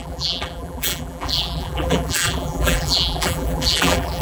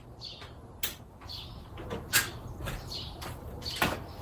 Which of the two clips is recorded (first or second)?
second